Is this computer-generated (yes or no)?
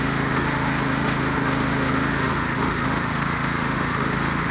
yes